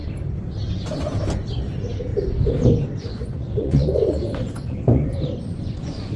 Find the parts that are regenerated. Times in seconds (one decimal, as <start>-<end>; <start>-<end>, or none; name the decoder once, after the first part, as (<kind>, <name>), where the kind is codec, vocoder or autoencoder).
1.7-2.1 (vocoder, Vocos); 3.0-6.2